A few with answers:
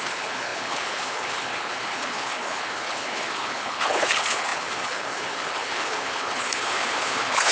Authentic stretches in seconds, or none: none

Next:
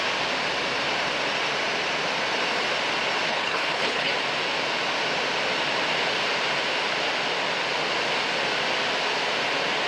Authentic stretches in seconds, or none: 0.0-3.3; 4.1-9.9